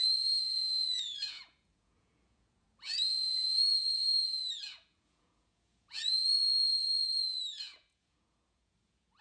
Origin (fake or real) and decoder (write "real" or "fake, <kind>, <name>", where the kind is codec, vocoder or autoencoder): fake, vocoder, Vocos